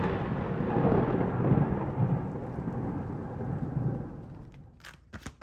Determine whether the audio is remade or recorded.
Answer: recorded